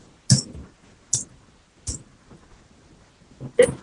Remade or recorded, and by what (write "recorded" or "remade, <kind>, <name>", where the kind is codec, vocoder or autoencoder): recorded